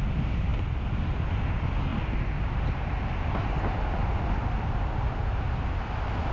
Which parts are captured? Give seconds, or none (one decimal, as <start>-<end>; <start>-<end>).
0.0-6.3